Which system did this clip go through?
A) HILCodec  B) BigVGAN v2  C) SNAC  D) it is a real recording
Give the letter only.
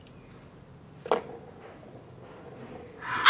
D